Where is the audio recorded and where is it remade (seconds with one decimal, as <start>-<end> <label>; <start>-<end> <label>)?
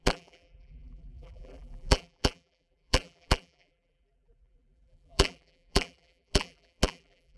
0.0-7.4 remade